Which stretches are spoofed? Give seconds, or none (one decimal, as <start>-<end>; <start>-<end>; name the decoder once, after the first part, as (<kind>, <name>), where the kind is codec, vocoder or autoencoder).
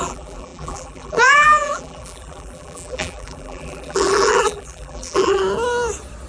0.0-5.4 (vocoder, BigVGAN v2)